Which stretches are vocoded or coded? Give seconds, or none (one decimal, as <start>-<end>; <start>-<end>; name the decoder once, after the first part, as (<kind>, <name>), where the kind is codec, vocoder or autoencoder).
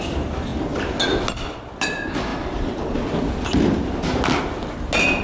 none